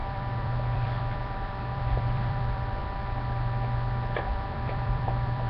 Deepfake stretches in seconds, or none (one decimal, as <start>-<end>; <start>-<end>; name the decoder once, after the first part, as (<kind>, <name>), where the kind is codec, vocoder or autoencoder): 0.0-2.8 (vocoder, BigVGAN v2); 4.3-5.5